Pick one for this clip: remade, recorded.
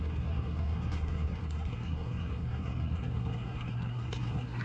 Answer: remade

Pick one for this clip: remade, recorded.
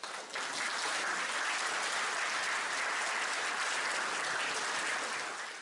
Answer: recorded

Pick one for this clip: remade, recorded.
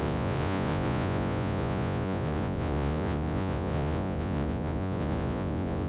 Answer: remade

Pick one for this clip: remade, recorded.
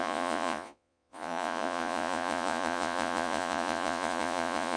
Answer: remade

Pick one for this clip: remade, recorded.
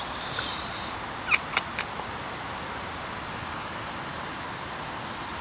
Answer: recorded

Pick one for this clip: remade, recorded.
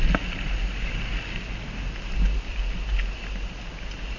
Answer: recorded